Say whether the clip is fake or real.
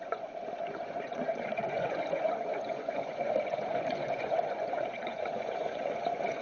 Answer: fake